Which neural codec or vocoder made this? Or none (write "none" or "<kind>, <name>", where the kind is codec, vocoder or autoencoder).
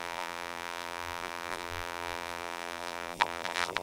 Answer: vocoder, BigVGAN v2